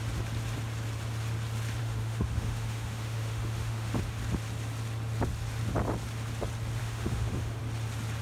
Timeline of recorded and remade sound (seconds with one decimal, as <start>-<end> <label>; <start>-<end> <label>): 0.0-1.8 recorded; 1.8-4.0 remade; 4.0-6.8 recorded; 6.8-7.6 remade; 7.6-8.2 recorded